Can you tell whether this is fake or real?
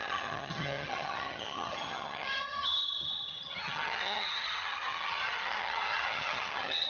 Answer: fake